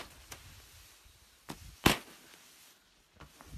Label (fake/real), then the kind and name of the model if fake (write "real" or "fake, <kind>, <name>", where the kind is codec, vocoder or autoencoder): real